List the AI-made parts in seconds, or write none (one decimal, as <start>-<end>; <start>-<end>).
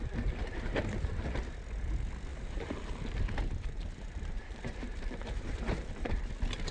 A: 0.4-0.9; 2.3-6.3